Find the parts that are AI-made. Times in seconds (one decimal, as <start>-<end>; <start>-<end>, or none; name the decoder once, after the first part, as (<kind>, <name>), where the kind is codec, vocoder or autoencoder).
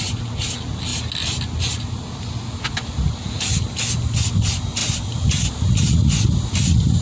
none